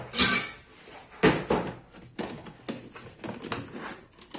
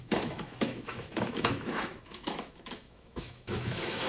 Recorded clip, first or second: first